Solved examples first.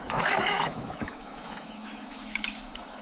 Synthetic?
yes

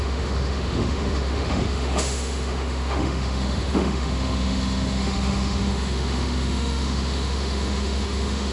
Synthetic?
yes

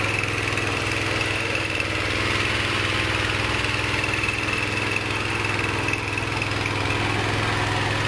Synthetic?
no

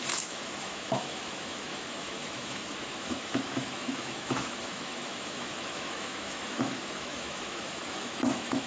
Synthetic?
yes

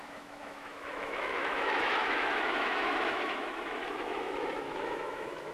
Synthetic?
yes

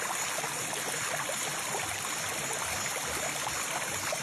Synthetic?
no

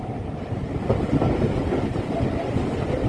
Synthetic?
no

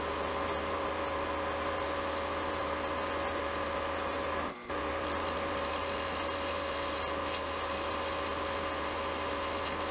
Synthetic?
no